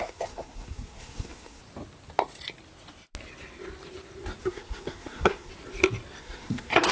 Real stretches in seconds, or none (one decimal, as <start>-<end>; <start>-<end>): 1.6-4.4; 5.5-6.2